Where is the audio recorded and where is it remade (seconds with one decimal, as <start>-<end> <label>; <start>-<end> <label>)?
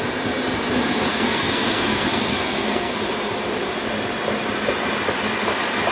0.0-1.1 recorded; 1.1-3.0 remade; 3.0-5.9 recorded